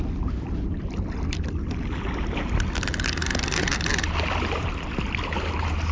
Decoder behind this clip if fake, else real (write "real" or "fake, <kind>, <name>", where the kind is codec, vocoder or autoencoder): real